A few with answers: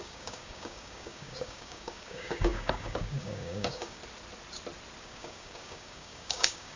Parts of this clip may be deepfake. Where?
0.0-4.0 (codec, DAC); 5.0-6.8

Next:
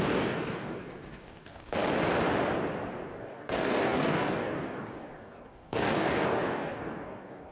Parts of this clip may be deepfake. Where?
0.0-1.8 (codec, DAC); 3.2-7.5